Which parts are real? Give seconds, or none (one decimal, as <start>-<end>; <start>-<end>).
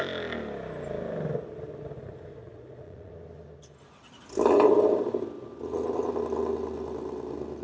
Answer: 0.0-2.4; 3.1-7.6